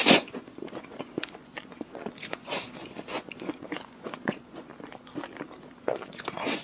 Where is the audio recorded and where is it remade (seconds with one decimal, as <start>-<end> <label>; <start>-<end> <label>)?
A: 0.0-4.7 remade; 4.7-5.8 recorded; 5.8-6.6 remade